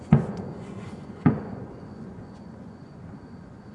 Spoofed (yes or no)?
yes